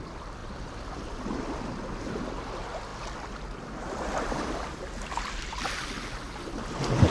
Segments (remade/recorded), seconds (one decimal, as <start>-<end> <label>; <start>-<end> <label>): 0.0-7.1 recorded